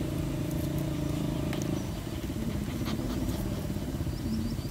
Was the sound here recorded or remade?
recorded